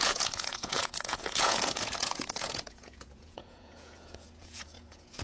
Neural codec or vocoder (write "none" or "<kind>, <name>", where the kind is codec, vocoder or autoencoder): vocoder, Vocos